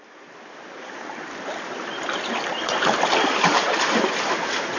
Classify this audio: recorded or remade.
recorded